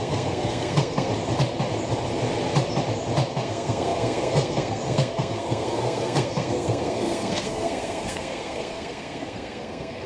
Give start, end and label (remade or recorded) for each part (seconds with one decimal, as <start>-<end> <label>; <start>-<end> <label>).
0.0-1.1 remade; 1.1-3.3 recorded; 3.3-10.1 remade